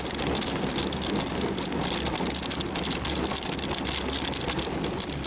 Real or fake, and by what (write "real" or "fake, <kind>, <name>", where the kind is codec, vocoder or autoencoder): real